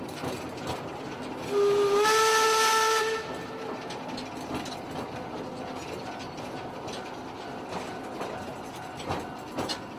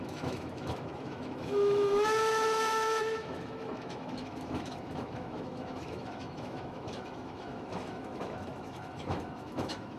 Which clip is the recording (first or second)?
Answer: first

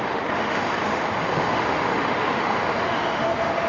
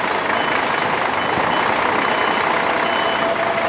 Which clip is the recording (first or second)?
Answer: second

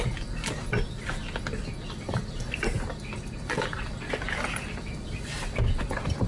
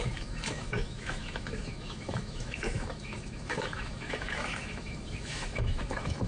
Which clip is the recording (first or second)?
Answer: first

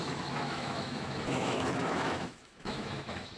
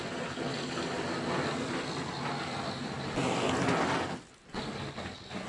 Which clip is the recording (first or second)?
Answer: second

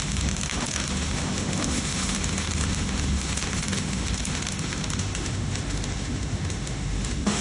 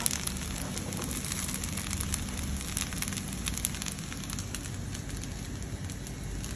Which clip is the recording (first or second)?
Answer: second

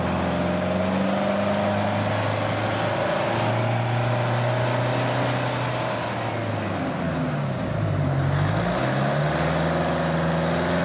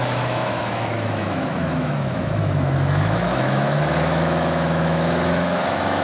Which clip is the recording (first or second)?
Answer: first